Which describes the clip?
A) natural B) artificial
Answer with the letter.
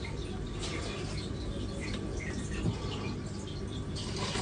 A